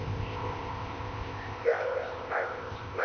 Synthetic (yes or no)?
yes